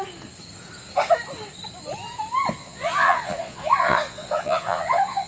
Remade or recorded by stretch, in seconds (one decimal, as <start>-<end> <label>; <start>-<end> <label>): 0.0-2.6 recorded; 2.6-5.3 remade